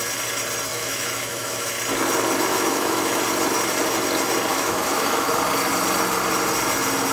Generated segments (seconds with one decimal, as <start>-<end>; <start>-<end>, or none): 0.7-1.7; 2.5-3.2; 4.5-5.3